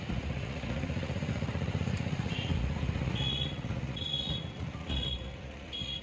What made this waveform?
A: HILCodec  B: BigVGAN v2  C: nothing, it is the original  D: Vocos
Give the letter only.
D